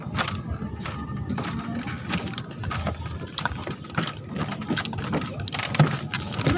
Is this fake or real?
real